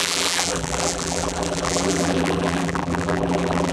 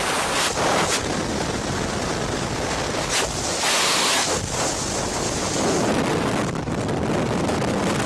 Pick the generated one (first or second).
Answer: first